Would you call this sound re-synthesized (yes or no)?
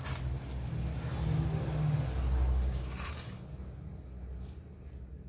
no